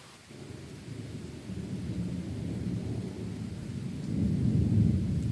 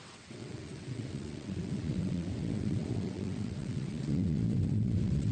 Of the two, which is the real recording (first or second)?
first